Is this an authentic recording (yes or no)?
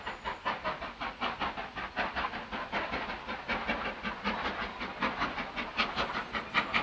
yes